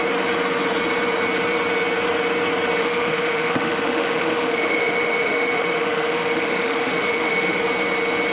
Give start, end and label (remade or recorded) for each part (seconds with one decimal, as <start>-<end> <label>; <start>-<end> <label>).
0.0-2.8 recorded; 2.8-7.6 remade; 7.6-8.3 recorded